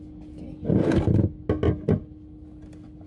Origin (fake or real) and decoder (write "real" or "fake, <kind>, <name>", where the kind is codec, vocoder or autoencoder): real